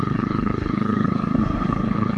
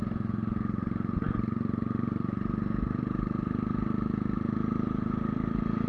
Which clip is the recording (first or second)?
second